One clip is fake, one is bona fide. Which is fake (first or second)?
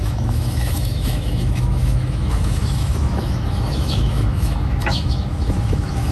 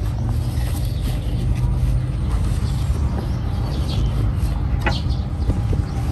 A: first